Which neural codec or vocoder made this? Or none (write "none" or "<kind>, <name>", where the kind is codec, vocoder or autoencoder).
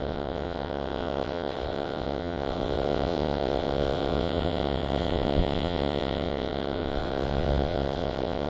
vocoder, WaveNeXt